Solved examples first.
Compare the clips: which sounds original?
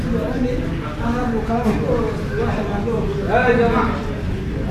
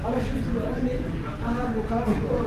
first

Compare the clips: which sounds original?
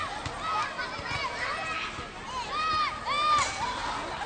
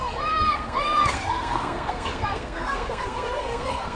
first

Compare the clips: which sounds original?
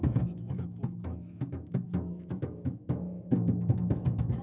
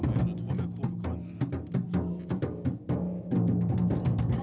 second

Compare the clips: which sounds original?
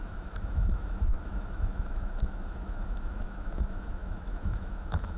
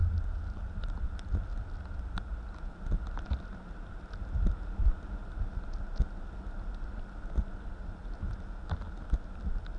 second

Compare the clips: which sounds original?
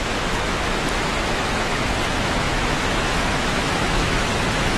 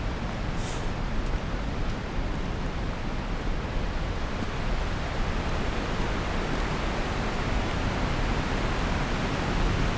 second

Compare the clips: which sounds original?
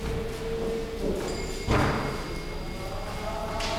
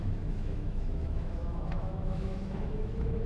first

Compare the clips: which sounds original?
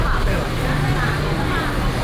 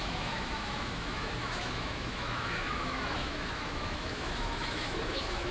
first